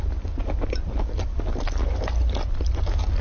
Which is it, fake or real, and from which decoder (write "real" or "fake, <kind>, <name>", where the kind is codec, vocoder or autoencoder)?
real